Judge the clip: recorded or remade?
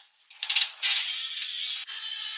remade